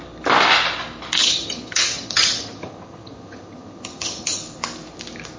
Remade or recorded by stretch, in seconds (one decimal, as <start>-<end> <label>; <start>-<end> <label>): 0.0-1.2 recorded; 1.2-4.4 remade; 4.4-5.4 recorded